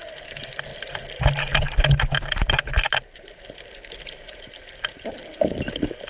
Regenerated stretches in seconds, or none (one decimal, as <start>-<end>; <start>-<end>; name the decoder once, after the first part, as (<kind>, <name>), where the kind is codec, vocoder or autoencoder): none